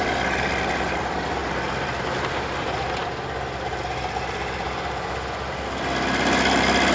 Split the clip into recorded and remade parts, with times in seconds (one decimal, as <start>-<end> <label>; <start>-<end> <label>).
0.0-6.9 recorded